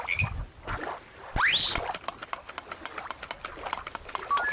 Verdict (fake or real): real